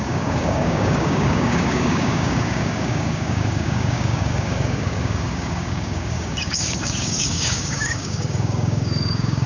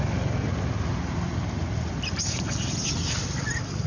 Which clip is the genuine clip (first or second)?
second